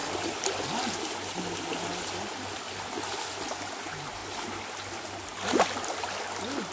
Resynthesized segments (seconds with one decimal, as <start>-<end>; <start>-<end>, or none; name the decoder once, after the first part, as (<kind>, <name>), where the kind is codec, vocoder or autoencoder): none